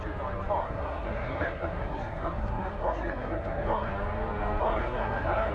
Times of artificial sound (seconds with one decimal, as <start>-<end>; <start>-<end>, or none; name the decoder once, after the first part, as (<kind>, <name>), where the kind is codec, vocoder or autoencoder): 0.6-3.9 (codec, SNAC); 4.6-5.5